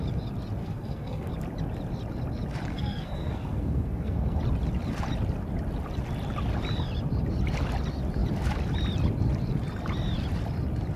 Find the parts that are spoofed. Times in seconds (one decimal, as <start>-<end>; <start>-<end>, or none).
0.6-1.3; 2.7-4.4